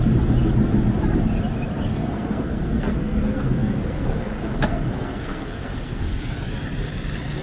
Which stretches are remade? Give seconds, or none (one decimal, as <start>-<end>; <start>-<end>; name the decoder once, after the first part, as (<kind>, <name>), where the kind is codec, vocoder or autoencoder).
1.9-6.3 (codec, SNAC)